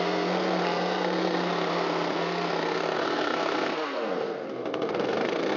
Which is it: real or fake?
fake